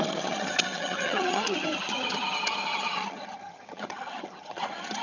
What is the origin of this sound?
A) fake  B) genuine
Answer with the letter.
A